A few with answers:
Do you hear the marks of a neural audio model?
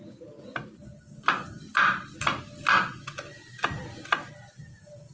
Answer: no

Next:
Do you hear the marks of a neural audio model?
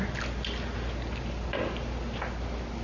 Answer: no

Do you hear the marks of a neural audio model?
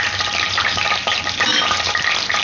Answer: yes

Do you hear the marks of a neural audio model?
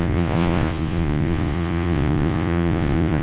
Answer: yes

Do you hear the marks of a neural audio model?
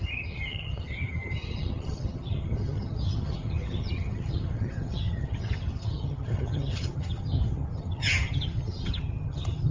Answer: yes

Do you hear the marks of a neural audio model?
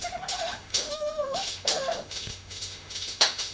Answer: yes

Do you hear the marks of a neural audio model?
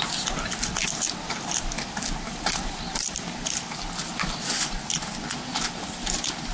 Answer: no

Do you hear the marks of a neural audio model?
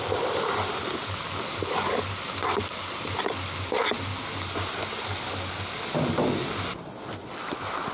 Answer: no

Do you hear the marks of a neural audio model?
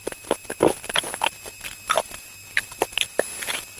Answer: no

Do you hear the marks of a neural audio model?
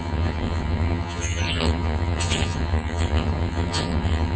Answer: yes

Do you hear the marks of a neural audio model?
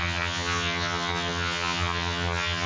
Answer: yes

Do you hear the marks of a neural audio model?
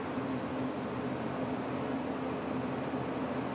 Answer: no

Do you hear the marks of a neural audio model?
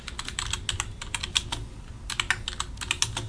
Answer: no